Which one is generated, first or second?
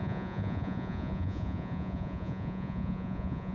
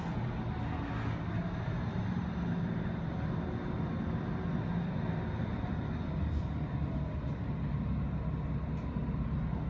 first